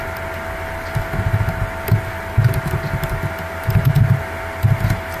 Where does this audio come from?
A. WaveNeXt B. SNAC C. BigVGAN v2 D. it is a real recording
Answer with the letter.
D